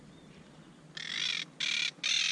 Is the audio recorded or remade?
recorded